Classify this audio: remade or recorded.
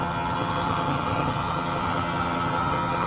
remade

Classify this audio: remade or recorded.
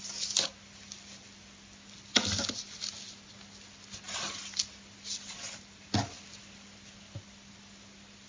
recorded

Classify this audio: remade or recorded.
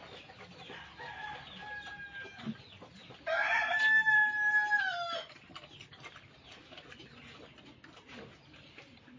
recorded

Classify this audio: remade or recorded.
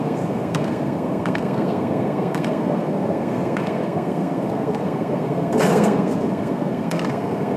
remade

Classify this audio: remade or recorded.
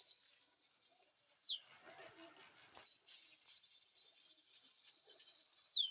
recorded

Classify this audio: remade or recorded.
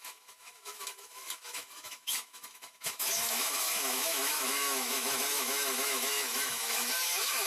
remade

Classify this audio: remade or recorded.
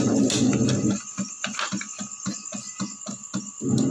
recorded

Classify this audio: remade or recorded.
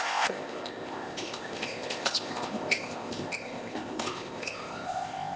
remade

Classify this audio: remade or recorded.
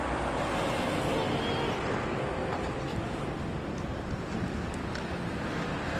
recorded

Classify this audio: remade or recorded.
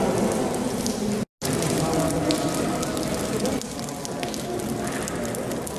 recorded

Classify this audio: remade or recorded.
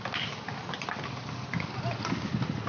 recorded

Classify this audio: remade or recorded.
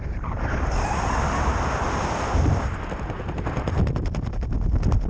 recorded